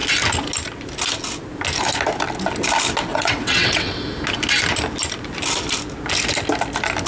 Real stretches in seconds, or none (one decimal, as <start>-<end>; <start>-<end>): 0.0-3.1; 4.0-7.1

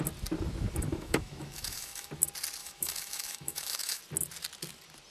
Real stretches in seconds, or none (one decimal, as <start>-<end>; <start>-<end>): 0.0-0.9; 2.1-2.6; 4.0-5.1

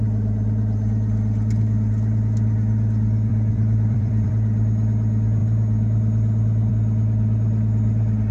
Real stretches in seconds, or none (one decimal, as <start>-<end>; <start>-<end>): 0.0-3.3; 4.3-8.3

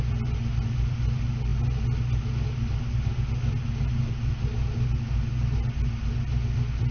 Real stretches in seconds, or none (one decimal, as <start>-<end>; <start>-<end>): 0.0-6.9

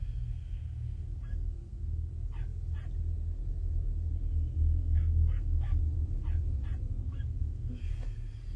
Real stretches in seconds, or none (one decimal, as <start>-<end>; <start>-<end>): 2.1-4.8; 5.8-7.0; 7.8-8.6

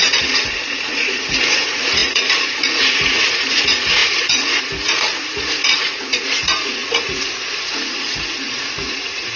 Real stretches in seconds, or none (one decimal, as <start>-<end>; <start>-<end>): none

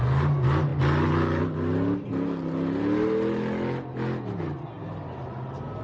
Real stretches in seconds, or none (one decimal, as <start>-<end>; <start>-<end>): 0.0-5.8

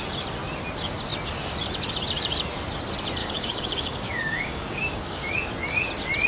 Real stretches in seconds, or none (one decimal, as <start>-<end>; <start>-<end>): 0.0-3.2; 5.3-6.3